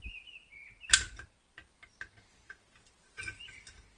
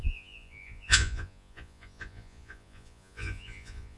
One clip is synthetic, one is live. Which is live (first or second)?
first